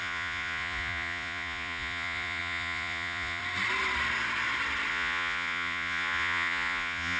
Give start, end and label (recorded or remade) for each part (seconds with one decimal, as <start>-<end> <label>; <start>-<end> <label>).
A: 0.0-3.4 remade; 3.4-4.9 recorded; 4.9-7.2 remade